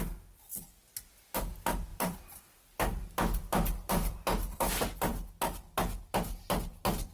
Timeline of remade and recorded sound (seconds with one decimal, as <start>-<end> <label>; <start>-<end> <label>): 0.0-1.9 recorded; 1.9-4.6 remade; 4.6-7.1 recorded